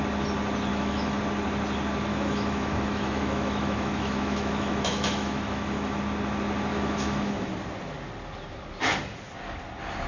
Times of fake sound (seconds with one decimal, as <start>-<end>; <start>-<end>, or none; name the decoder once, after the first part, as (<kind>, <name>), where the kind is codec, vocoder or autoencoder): 0.7-1.2 (autoencoder, DAC-VAE); 2.1-6.0; 6.7-7.5